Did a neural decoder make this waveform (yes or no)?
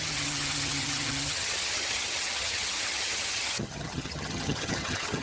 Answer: yes